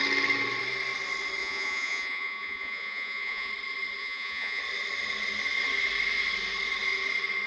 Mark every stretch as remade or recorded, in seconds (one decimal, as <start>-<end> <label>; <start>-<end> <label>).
0.0-1.4 recorded; 1.4-3.5 remade; 3.5-4.0 recorded; 4.0-4.6 remade; 4.6-7.5 recorded